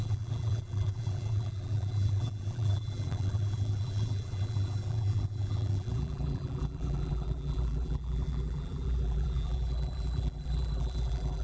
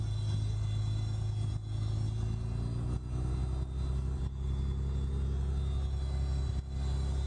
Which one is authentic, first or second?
second